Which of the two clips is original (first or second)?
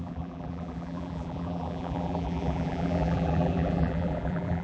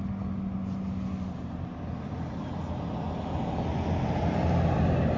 second